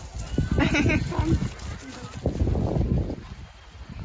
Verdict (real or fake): real